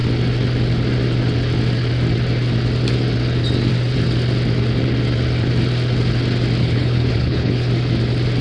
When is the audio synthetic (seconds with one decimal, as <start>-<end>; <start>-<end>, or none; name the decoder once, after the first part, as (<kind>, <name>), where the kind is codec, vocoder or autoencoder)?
6.6-7.7 (codec, HILCodec)